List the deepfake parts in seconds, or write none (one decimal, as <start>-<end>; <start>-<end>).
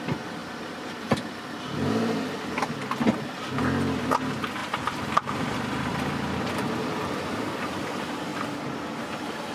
0.4-1.0; 4.6-7.9; 8.3-8.8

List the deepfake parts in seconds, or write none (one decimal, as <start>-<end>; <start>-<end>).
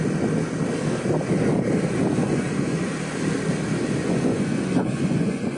2.2-2.9; 4.0-5.6